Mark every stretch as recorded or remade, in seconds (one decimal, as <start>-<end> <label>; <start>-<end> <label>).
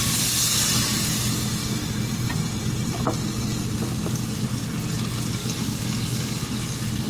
0.0-5.4 recorded; 5.4-6.4 remade; 6.4-7.1 recorded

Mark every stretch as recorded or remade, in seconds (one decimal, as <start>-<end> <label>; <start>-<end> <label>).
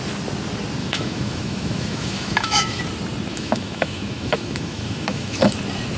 0.0-0.8 recorded; 0.8-2.8 remade; 2.8-3.3 recorded; 3.3-5.5 remade; 5.5-6.0 recorded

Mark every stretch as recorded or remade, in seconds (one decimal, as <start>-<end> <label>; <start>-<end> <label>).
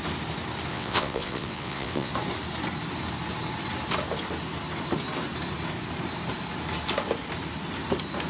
0.0-0.7 recorded; 0.7-2.1 remade; 2.1-8.3 recorded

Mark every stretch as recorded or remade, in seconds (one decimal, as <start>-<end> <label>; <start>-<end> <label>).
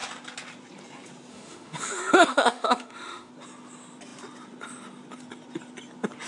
0.0-1.3 recorded; 1.3-3.3 remade; 3.3-6.3 recorded